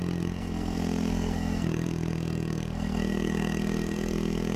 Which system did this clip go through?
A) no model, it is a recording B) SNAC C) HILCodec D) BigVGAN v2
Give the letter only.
B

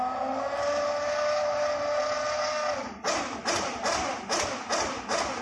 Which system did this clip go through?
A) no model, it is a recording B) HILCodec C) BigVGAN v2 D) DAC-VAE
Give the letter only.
A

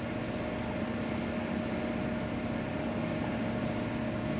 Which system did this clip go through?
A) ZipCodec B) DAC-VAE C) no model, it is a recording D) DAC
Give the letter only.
C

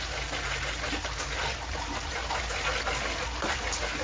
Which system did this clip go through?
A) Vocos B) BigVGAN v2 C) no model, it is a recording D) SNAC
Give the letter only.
C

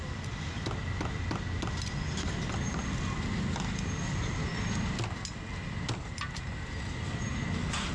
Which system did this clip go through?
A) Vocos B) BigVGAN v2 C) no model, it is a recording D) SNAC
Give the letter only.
C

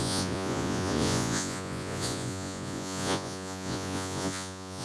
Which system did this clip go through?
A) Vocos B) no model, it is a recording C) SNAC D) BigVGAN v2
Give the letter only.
A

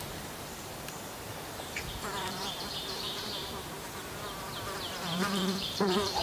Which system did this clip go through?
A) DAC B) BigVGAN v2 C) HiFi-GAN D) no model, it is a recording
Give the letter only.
B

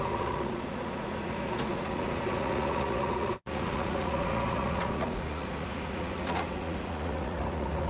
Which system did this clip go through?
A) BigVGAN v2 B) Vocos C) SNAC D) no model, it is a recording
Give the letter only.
B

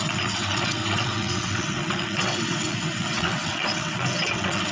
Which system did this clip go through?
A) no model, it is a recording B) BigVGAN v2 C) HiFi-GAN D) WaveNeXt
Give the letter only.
D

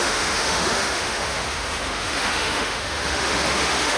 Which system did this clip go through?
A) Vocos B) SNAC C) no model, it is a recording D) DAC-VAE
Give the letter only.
D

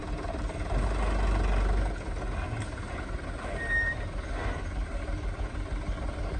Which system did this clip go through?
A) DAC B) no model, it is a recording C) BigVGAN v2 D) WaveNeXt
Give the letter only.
B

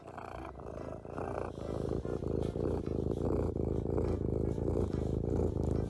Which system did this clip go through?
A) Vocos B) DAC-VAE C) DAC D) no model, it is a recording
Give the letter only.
D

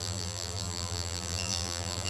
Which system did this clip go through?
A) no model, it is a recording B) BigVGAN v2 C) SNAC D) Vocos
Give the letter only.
B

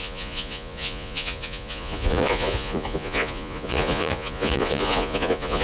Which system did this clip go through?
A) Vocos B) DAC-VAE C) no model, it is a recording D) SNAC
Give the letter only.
A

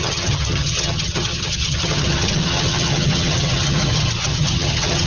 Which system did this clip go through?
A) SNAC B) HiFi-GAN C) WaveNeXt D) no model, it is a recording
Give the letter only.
B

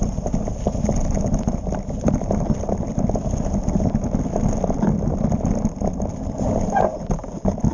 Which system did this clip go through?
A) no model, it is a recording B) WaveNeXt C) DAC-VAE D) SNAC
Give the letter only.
A